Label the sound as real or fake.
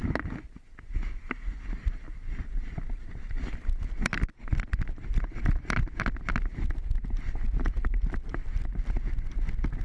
real